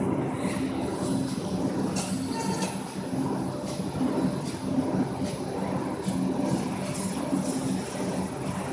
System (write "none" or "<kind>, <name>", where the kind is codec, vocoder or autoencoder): none